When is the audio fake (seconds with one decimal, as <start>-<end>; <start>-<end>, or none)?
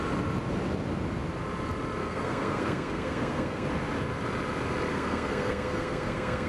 2.0-3.7; 4.9-6.5